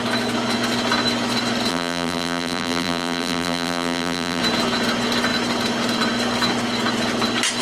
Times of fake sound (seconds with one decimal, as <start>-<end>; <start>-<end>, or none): 1.7-4.4